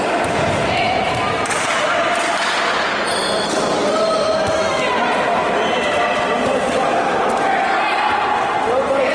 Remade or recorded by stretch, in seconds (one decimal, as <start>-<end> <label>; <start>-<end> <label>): 0.0-9.1 recorded

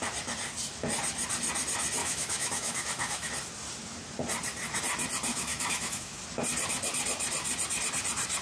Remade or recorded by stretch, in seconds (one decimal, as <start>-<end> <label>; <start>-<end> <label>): 0.0-2.0 recorded; 2.0-3.3 remade; 3.3-5.3 recorded; 5.3-6.2 remade; 6.2-8.4 recorded

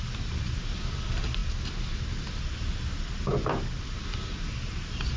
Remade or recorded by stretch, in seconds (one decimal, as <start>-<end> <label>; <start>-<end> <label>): 0.0-5.2 recorded